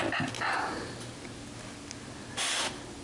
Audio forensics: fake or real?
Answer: real